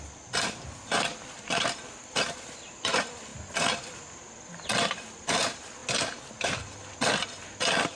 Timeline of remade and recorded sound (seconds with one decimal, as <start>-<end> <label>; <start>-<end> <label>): 0.0-3.3 remade; 3.3-3.8 recorded; 3.8-8.0 remade

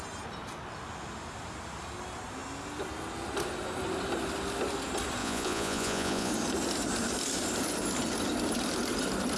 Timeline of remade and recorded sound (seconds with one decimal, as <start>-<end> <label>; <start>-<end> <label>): 0.0-5.2 recorded; 5.2-6.3 remade; 6.3-9.4 recorded